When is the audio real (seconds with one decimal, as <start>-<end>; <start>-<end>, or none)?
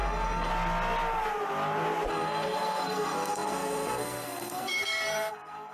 0.5-2.1